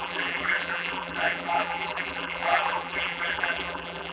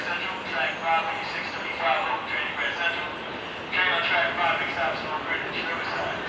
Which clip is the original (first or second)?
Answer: second